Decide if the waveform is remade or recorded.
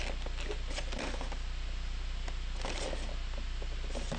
recorded